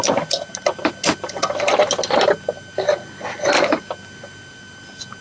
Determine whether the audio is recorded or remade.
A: recorded